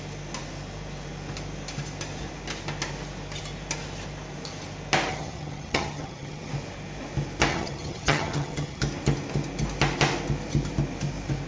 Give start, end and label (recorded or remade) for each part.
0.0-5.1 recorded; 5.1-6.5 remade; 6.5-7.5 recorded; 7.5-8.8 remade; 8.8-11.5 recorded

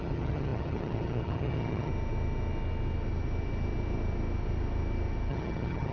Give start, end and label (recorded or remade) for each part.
0.0-1.9 remade; 1.9-5.3 recorded; 5.3-5.9 remade

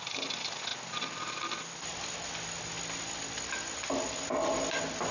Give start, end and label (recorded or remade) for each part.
0.0-5.1 recorded

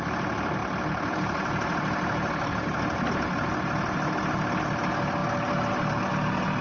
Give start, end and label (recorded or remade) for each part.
0.0-6.6 recorded